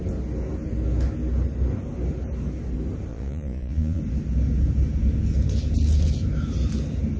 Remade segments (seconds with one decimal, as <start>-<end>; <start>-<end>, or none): 3.1-4.0